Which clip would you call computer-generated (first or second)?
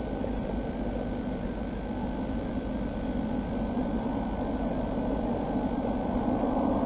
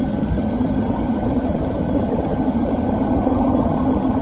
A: second